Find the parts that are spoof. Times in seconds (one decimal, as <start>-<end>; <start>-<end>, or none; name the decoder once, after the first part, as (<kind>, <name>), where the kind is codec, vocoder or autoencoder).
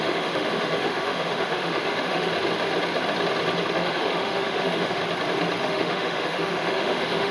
0.0-2.3 (autoencoder, DAC-VAE); 3.7-5.0; 5.6-7.3